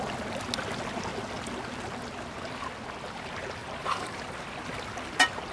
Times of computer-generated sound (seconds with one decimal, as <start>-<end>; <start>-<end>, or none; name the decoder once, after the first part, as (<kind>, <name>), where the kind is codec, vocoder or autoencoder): 3.6-4.8 (vocoder, BigVGAN v2)